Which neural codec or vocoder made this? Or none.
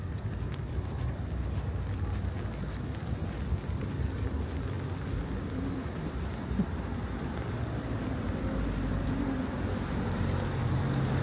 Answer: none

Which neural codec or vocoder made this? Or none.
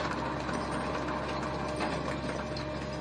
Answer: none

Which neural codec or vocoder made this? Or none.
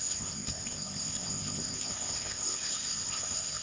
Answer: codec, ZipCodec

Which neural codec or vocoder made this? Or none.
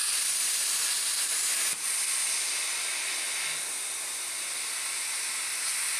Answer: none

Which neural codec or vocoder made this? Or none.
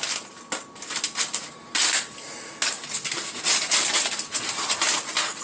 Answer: none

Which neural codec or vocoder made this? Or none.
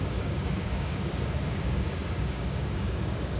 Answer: codec, DAC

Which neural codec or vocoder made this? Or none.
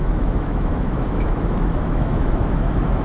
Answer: autoencoder, DAC-VAE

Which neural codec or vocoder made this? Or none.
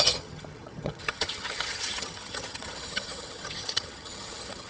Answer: vocoder, HiFi-GAN